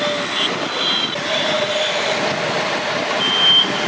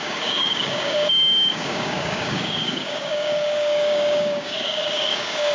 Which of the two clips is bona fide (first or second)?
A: first